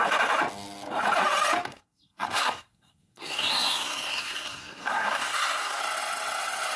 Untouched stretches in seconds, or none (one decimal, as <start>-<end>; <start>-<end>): 0.0-1.7; 5.8-6.8